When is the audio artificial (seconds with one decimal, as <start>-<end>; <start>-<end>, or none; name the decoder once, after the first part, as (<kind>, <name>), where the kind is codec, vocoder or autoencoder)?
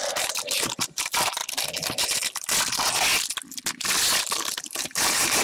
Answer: 0.0-1.4 (vocoder, BigVGAN v2); 4.6-5.4